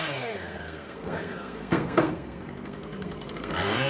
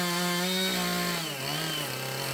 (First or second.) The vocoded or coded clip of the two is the first